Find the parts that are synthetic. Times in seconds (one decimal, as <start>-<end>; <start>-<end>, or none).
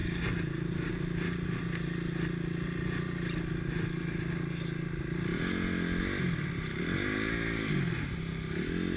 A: none